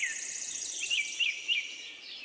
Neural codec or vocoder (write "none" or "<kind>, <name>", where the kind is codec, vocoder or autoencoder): none